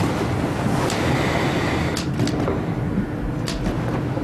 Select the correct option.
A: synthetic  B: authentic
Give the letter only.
B